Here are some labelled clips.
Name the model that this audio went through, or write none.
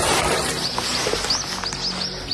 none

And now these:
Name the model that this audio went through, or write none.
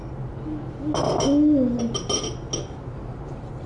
none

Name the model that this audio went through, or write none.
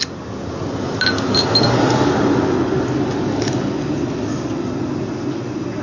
none